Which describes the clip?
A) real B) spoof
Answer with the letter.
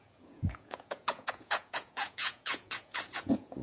B